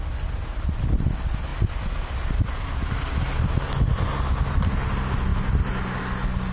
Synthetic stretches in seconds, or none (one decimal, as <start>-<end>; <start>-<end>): none

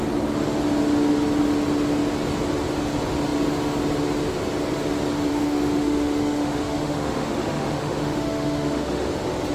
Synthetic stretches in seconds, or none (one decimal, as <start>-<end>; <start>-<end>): 5.3-9.1

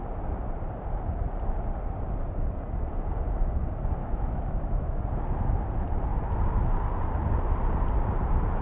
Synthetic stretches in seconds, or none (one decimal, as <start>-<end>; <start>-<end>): 4.0-5.0

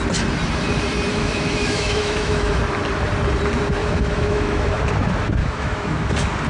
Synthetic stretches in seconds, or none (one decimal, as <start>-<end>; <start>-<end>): 1.1-2.6; 3.8-4.8; 5.4-6.1

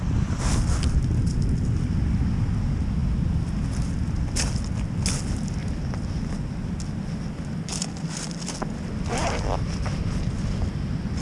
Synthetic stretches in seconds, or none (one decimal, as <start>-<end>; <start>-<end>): none

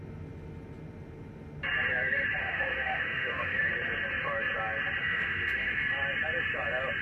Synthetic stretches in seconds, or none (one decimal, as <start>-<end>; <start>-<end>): 2.4-3.6; 5.0-5.8